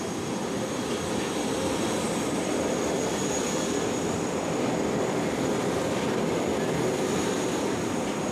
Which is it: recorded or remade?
recorded